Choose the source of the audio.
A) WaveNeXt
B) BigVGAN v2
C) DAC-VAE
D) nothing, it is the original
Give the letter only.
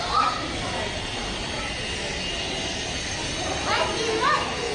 D